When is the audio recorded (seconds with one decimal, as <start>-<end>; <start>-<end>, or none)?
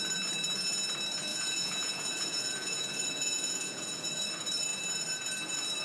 0.0-1.3; 4.3-5.8